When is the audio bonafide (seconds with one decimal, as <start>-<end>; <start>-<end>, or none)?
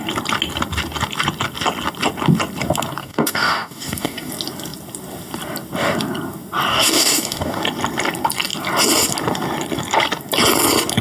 0.0-3.0; 4.3-6.7; 7.6-11.0